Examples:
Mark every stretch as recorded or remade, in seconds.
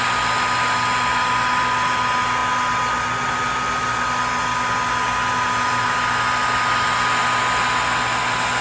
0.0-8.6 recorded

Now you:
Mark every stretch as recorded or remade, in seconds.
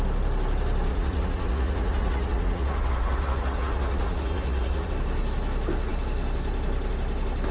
0.0-0.9 recorded; 0.9-4.9 remade; 4.9-7.5 recorded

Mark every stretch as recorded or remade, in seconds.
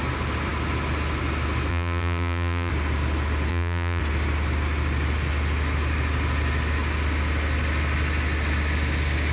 0.0-1.7 recorded; 1.7-2.7 remade; 2.7-3.5 recorded; 3.5-4.0 remade; 4.0-9.3 recorded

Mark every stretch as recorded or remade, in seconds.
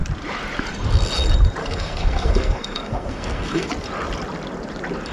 0.0-1.6 recorded; 1.6-3.7 remade; 3.7-5.1 recorded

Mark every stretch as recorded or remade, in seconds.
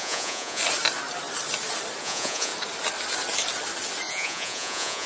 0.0-0.6 remade; 0.6-2.0 recorded; 2.0-2.5 remade; 2.5-4.1 recorded; 4.1-5.1 remade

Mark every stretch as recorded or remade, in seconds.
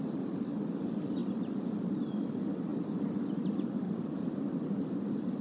0.0-5.4 recorded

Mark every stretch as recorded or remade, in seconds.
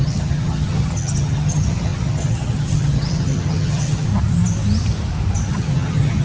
0.0-4.1 remade; 4.1-5.5 recorded; 5.5-6.2 remade